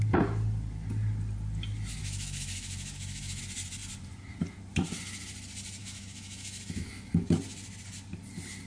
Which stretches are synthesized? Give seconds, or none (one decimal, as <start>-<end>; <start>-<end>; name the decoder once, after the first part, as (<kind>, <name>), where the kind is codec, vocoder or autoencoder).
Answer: 2.0-3.4 (autoencoder, DAC-VAE); 5.8-7.1